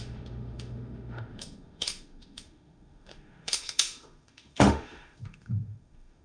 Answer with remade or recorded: remade